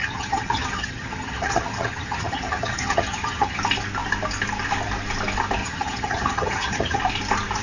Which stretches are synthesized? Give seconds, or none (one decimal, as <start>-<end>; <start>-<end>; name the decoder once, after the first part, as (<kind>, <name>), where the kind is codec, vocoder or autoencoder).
0.0-3.6 (vocoder, HiFi-GAN); 5.6-7.0